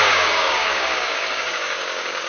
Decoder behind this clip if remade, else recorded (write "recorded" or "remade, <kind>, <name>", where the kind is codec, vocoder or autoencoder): remade, codec, DAC